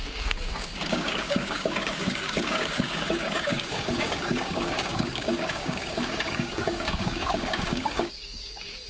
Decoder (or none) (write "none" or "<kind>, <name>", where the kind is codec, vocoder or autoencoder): codec, DAC